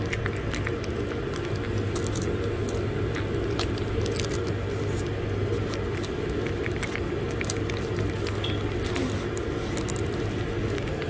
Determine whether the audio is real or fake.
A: real